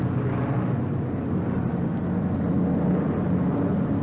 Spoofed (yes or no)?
no